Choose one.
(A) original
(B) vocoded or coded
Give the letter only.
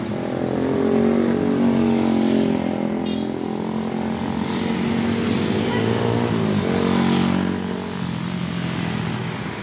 A